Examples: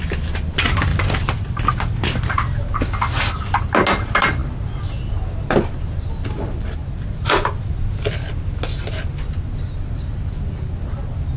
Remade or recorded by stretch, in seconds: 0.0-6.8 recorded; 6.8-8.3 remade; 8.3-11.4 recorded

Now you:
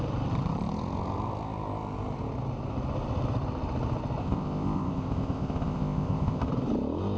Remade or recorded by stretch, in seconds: 0.0-4.2 recorded; 4.2-6.5 remade; 6.5-7.2 recorded

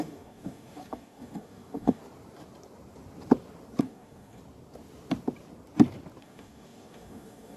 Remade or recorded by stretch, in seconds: 0.0-2.0 remade; 2.0-3.8 recorded; 3.8-4.4 remade; 4.4-6.2 recorded; 6.2-7.6 remade